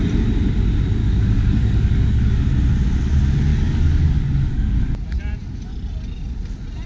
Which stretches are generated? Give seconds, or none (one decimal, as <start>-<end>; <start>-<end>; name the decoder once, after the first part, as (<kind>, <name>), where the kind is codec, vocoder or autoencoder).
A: 1.0-2.5 (codec, DAC); 3.5-4.8